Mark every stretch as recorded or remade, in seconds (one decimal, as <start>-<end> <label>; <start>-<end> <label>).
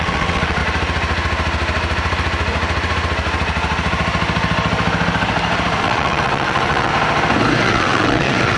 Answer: 0.0-0.6 remade; 0.6-5.8 recorded; 5.8-6.9 remade; 6.9-7.6 recorded; 7.6-8.6 remade